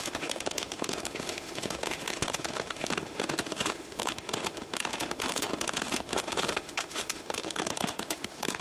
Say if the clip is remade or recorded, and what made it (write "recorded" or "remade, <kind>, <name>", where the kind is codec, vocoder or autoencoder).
remade, autoencoder, DAC-VAE